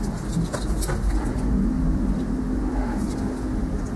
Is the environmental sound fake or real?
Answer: real